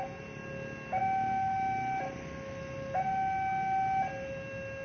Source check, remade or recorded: recorded